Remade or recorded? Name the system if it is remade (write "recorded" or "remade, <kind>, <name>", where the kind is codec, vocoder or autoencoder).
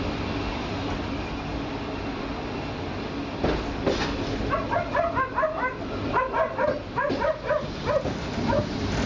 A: recorded